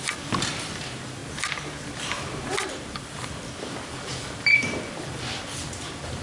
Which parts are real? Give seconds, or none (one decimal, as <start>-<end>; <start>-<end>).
1.2-2.7